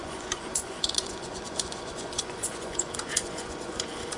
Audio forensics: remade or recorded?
remade